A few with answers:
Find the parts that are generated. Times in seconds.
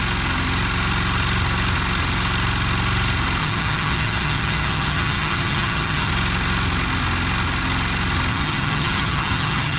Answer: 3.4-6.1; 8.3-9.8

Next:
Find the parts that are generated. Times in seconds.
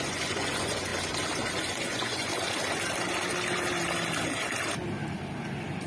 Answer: 0.0-0.9; 1.5-2.3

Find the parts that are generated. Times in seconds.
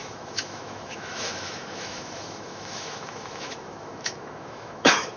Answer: 0.0-5.2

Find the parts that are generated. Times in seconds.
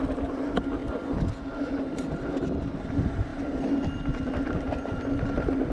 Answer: none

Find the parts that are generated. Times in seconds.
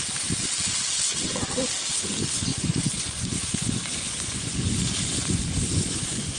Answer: 2.5-6.4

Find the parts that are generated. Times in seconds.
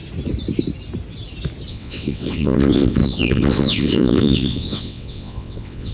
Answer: 1.7-5.9